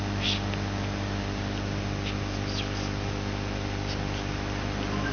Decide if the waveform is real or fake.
real